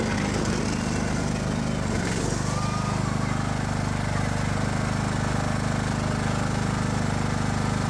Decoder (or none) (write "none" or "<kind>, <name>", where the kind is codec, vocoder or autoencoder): none